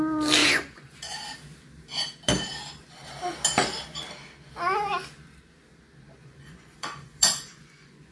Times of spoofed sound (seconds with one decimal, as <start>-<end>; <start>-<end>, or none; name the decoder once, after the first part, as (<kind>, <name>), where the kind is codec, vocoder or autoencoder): 0.4-1.2 (vocoder, Vocos); 6.2-8.1